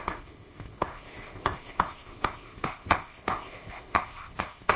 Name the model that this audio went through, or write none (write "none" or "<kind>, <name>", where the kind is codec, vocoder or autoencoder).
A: codec, ZipCodec